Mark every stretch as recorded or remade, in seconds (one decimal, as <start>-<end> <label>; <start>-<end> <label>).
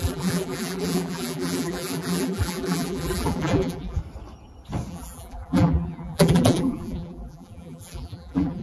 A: 0.0-4.0 remade; 4.0-4.9 recorded; 4.9-8.6 remade